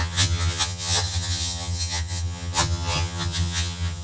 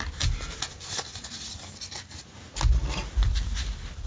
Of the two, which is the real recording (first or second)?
second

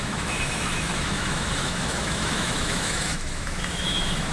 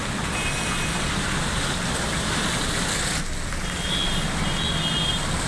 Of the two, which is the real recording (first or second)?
second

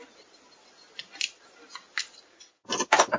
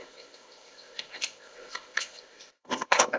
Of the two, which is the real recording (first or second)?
first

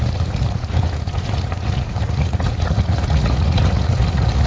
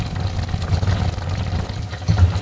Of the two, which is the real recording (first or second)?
second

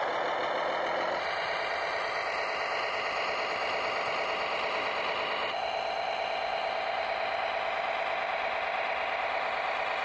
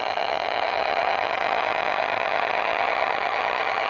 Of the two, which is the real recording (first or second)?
first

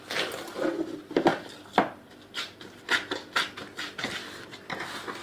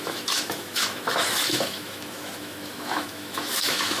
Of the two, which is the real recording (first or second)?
first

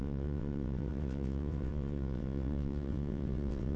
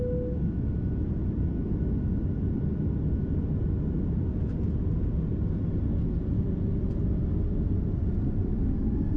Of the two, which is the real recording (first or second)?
second